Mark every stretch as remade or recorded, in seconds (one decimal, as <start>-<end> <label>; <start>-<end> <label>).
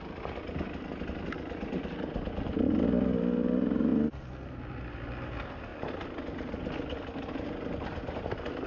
0.0-8.7 recorded